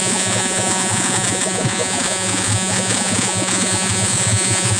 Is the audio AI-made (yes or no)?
yes